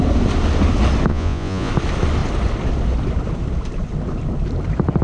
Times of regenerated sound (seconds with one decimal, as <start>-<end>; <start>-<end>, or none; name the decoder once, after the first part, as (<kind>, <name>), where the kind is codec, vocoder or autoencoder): 1.1-1.7 (vocoder, Vocos)